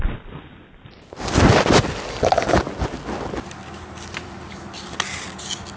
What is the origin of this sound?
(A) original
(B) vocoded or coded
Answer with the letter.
A